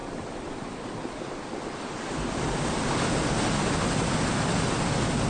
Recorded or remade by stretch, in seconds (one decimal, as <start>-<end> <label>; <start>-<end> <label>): 0.0-5.3 recorded